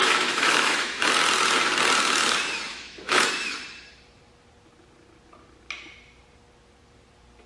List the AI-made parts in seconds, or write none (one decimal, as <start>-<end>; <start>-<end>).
0.0-1.1; 2.7-3.3